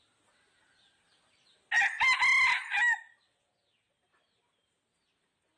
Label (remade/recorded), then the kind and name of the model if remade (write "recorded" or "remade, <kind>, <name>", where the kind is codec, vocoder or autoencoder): recorded